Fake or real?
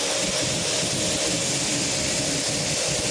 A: real